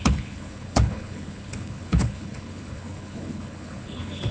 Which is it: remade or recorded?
remade